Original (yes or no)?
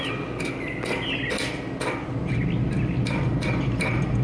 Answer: yes